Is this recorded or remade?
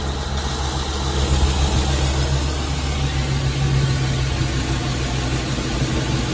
recorded